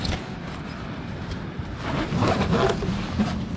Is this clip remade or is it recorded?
recorded